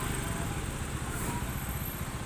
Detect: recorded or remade recorded